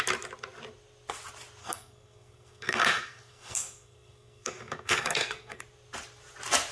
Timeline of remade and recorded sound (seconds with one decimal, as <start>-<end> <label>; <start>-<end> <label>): 0.0-1.6 recorded; 1.6-5.6 remade; 5.6-6.7 recorded